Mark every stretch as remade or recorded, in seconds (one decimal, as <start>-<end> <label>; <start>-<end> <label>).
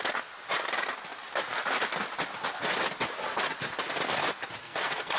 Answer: 0.0-4.6 recorded; 4.6-5.2 remade